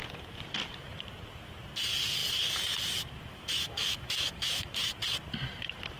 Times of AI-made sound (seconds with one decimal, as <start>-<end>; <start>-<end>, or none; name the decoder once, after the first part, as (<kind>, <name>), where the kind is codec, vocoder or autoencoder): 3.3-4.9 (autoencoder, DAC-VAE)

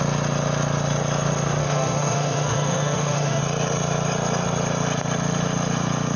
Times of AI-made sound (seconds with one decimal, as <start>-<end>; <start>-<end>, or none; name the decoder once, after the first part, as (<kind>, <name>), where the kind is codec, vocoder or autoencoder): 1.6-3.4 (autoencoder, DAC-VAE)

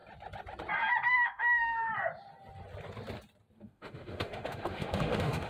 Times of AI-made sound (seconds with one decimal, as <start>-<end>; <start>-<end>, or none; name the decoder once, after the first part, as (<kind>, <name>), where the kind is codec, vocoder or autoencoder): 1.1-1.9 (autoencoder, DAC-VAE); 3.6-5.5

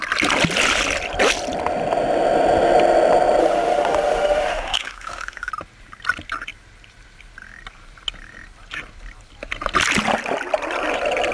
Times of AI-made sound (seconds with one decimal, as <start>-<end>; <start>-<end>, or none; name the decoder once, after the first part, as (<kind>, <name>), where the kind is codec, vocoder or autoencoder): 3.4-5.5 (autoencoder, DAC-VAE)

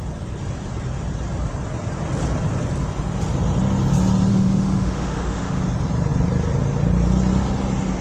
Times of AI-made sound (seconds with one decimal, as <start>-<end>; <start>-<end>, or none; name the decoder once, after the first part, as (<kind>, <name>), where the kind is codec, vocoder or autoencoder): 4.3-5.6 (autoencoder, DAC-VAE)

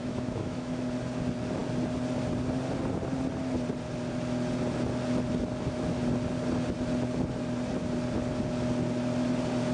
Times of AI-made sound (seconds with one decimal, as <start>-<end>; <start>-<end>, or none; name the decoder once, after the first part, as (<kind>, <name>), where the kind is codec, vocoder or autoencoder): 0.0-0.8 (autoencoder, DAC-VAE)